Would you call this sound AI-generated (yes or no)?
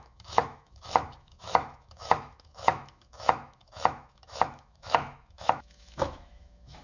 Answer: yes